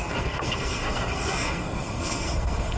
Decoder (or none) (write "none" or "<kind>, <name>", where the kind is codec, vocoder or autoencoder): codec, SNAC